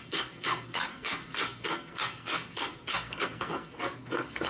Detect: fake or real fake